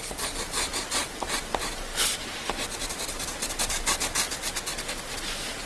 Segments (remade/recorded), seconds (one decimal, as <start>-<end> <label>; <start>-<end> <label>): 0.0-5.7 recorded